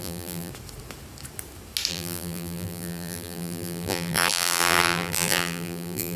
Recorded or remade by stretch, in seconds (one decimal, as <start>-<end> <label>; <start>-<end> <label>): 0.0-0.5 remade; 0.5-1.9 recorded; 1.9-6.2 remade